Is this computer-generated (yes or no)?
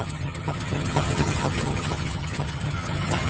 yes